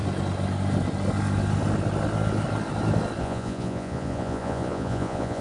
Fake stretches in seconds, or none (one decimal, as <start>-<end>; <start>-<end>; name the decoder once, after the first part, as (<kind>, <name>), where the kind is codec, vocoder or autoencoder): 3.2-5.4 (vocoder, Vocos)